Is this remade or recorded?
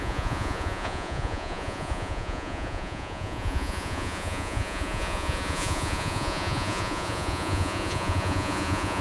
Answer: remade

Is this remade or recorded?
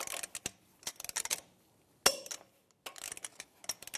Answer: recorded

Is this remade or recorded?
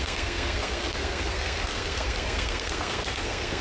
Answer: remade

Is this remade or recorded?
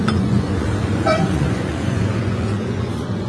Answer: remade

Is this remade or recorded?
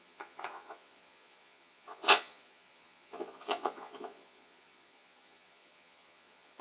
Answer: remade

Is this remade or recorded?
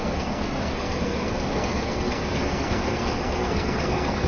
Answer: remade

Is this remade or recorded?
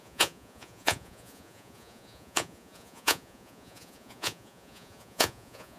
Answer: remade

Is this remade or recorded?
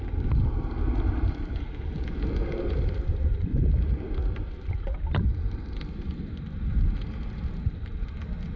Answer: recorded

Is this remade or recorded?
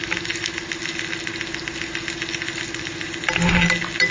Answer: recorded